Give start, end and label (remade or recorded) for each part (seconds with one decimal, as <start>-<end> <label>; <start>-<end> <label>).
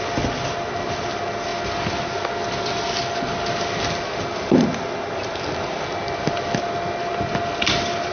0.0-8.1 recorded